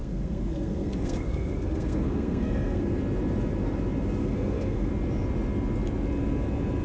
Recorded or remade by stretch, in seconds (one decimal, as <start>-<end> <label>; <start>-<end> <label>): 0.0-3.0 remade; 3.0-4.2 recorded; 4.2-4.9 remade; 4.9-6.8 recorded

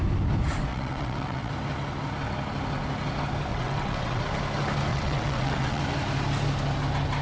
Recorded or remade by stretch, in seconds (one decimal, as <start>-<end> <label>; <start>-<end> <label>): 0.0-0.7 recorded; 0.7-1.5 remade; 1.5-3.5 recorded; 3.5-4.2 remade; 4.2-4.9 recorded; 4.9-5.8 remade; 5.8-7.2 recorded